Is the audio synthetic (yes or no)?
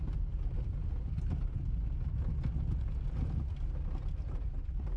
no